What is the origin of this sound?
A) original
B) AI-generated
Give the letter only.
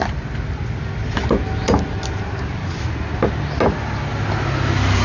A